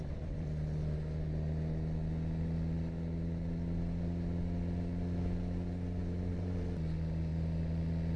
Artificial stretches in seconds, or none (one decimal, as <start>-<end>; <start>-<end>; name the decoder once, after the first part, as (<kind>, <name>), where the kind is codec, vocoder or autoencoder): 6.0-6.7 (vocoder, BigVGAN v2)